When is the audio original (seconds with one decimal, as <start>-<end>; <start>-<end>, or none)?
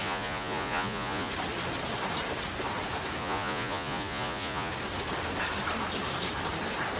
1.3-3.2; 4.7-7.0